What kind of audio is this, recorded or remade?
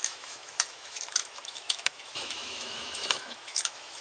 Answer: remade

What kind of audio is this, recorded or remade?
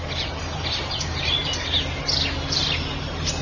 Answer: recorded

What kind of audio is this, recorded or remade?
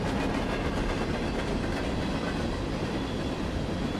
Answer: recorded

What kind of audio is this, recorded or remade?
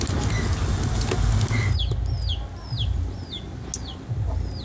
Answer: recorded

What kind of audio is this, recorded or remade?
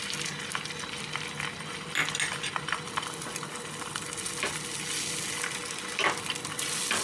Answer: recorded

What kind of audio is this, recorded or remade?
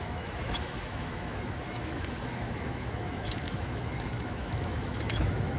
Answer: remade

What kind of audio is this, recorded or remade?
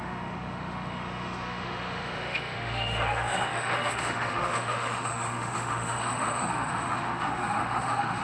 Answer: remade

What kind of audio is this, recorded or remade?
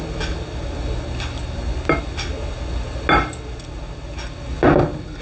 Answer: recorded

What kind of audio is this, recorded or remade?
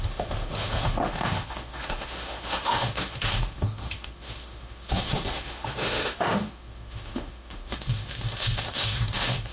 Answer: remade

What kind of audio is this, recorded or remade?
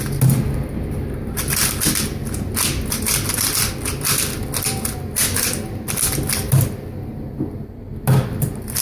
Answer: recorded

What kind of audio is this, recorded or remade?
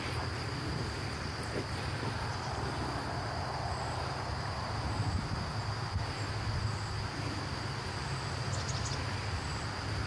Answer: recorded